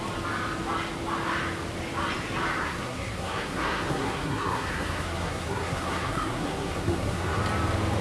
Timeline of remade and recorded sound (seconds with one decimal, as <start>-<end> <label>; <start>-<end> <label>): 0.0-2.6 recorded; 2.6-7.4 remade; 7.4-8.0 recorded